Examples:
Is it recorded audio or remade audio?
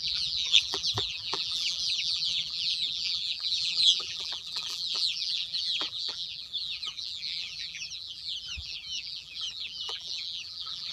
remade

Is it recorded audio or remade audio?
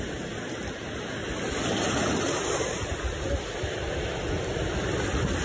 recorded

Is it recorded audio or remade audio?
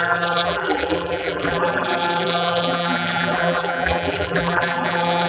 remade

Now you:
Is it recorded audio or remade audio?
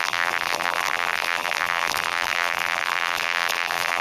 remade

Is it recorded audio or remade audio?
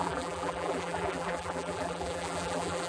remade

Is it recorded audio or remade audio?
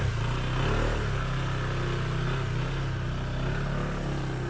recorded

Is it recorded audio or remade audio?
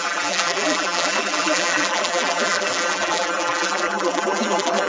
remade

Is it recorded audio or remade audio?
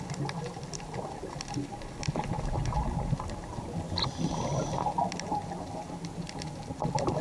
recorded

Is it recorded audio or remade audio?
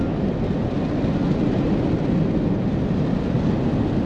recorded